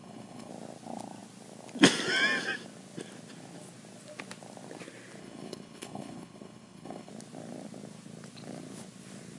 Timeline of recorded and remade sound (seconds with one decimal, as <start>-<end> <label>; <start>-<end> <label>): 0.0-0.5 remade; 0.5-5.2 recorded; 5.2-7.1 remade; 7.1-9.4 recorded